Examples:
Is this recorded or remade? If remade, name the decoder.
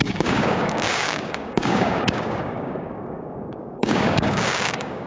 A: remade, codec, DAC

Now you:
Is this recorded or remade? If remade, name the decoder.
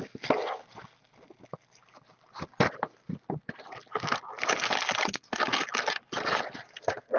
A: recorded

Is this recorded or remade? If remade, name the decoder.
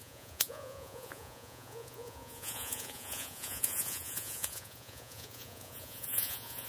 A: remade, vocoder, Vocos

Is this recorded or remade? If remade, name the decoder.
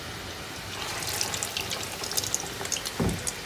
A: recorded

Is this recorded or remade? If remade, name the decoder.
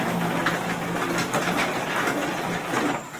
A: recorded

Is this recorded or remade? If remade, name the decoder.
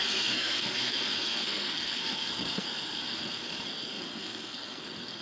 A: remade, codec, SNAC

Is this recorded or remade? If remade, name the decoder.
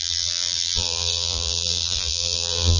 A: remade, vocoder, BigVGAN v2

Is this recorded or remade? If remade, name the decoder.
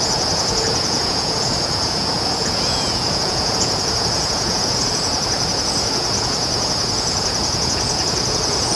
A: remade, vocoder, Vocos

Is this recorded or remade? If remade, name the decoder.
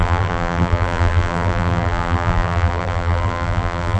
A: remade, vocoder, BigVGAN v2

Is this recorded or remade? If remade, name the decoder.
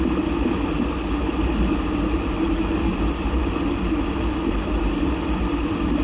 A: recorded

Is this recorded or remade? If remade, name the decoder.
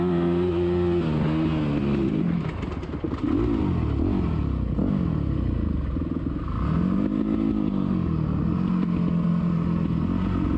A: recorded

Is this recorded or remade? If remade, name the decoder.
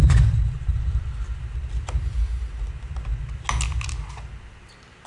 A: recorded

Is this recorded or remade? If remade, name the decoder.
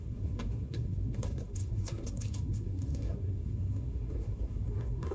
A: remade, codec, SNAC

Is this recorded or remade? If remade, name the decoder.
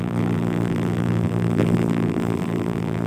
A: remade, vocoder, BigVGAN v2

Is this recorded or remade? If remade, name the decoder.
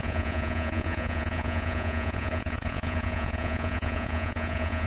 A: remade, vocoder, Vocos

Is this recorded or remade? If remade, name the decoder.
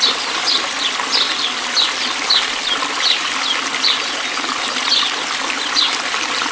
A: recorded